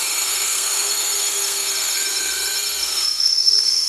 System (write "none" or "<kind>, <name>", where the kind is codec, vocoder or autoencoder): codec, SNAC